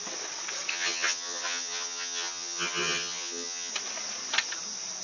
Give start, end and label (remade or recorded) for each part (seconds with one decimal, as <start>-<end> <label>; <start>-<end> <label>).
0.0-0.7 recorded; 0.7-3.7 remade; 3.7-5.0 recorded